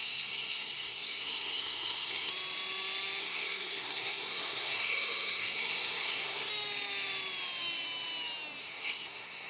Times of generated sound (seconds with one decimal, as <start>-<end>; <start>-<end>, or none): 0.0-2.3; 3.2-6.5; 8.6-9.5

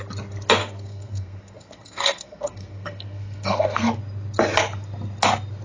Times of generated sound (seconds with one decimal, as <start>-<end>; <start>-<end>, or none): 0.6-4.0

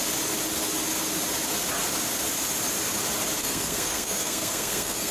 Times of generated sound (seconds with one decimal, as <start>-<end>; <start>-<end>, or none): 3.4-5.1

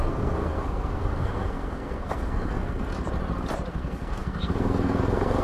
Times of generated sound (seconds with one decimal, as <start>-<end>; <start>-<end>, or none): 0.0-2.9; 3.7-5.4